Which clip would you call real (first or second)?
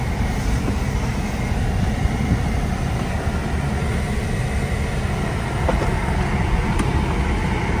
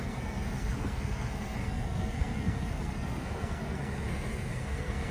first